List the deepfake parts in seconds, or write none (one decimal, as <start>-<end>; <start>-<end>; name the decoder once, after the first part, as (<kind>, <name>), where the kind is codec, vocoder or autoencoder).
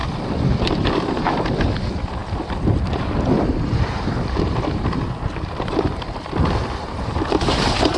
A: none